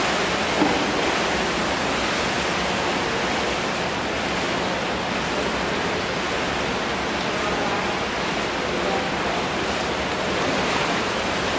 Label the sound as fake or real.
real